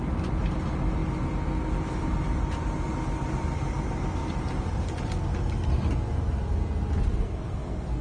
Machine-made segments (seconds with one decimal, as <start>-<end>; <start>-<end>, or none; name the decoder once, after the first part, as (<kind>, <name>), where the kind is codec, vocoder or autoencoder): 7.1-8.0 (codec, SNAC)